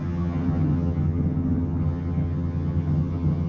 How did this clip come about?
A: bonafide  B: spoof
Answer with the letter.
B